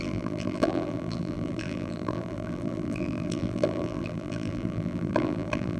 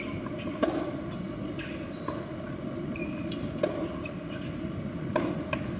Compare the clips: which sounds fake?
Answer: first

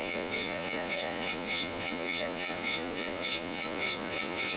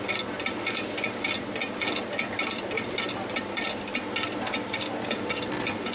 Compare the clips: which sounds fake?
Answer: first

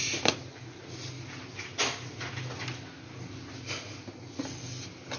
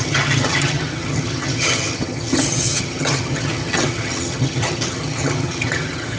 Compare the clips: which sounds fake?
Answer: second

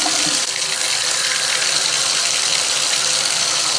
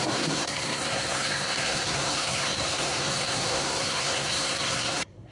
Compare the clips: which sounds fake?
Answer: second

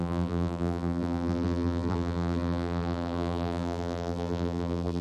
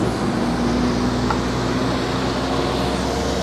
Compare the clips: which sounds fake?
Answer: first